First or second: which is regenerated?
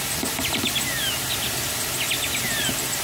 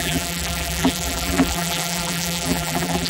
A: second